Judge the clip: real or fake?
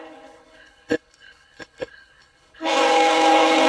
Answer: fake